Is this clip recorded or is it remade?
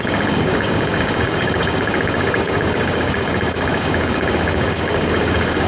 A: remade